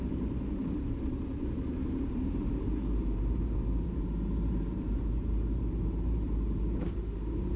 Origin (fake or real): fake